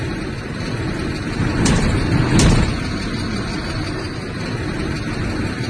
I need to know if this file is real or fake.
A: fake